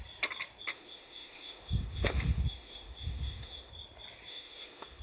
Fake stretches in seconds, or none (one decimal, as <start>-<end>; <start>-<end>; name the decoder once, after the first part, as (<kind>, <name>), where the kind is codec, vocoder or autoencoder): 0.7-3.7 (autoencoder, DAC-VAE); 4.3-5.0